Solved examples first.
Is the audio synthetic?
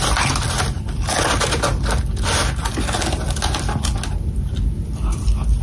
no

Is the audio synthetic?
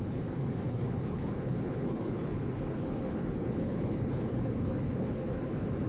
yes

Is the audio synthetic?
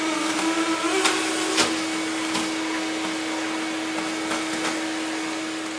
no